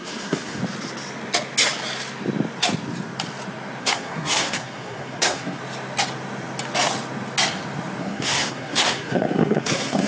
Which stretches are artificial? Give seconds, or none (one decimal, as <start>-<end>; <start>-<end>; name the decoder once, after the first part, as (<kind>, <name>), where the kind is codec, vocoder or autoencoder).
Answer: 0.0-0.6 (codec, SNAC); 3.8-5.6; 8.0-10.1